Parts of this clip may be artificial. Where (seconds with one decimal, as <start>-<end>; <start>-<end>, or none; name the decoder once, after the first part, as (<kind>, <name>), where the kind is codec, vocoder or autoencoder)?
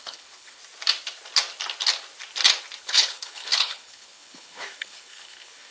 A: 0.0-0.6 (codec, HILCodec); 2.8-5.7